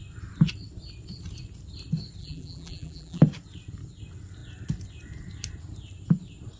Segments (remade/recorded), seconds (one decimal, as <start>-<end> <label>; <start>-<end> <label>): 0.0-2.2 recorded; 2.2-3.2 remade; 3.2-6.6 recorded